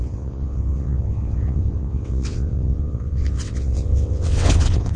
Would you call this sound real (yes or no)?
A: no